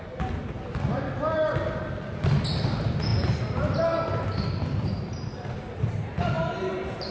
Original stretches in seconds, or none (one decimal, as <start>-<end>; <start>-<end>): 0.0-7.1